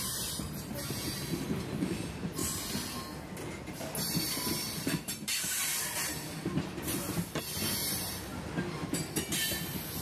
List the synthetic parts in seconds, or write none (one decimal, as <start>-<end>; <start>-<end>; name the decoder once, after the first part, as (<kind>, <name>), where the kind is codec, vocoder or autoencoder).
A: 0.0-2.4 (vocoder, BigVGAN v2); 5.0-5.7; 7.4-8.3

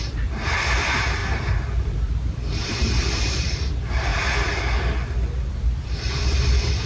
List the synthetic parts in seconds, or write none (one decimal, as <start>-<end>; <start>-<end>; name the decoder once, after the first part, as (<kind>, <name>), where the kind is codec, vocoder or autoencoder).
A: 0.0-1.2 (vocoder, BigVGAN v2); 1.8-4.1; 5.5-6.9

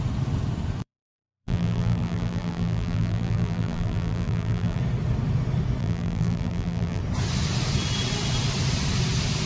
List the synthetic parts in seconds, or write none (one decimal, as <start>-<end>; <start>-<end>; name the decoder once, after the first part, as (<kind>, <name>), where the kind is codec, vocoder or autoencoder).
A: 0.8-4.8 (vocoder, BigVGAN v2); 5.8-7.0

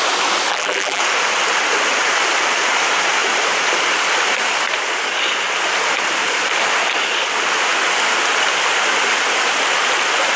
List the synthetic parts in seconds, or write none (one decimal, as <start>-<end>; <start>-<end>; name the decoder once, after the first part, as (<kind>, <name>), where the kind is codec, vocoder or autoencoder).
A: 0.5-1.0 (vocoder, BigVGAN v2)

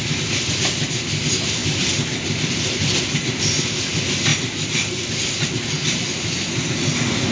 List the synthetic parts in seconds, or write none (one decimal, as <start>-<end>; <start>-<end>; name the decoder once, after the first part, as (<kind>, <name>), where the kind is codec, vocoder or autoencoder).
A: none

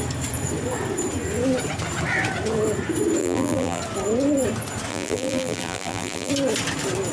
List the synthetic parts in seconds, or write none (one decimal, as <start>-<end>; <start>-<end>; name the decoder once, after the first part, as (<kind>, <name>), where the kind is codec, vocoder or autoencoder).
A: 3.2-3.8 (vocoder, BigVGAN v2); 4.9-6.3

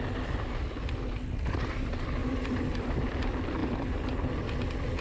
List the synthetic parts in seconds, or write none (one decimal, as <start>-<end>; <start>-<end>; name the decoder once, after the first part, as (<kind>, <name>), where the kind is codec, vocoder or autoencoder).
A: 2.2-3.2 (vocoder, BigVGAN v2)